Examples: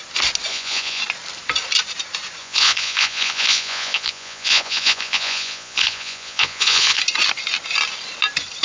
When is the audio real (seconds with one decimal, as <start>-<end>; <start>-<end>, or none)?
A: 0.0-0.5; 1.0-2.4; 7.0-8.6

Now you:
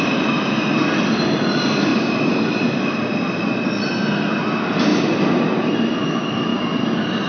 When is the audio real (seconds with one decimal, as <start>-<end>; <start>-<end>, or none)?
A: 0.0-7.3

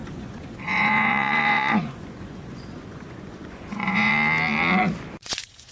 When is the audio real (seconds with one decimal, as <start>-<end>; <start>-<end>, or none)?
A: 4.1-5.2